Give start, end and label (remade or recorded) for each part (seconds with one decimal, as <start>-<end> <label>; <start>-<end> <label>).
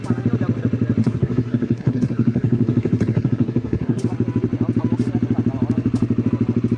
0.0-1.0 recorded; 1.0-4.0 remade; 4.0-6.8 recorded